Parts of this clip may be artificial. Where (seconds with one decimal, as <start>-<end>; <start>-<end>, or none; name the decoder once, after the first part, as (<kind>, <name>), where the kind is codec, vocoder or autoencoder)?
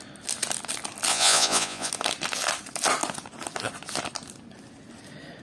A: 1.1-1.9 (vocoder, Vocos)